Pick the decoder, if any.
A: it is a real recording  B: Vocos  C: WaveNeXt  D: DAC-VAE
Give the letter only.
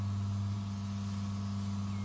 A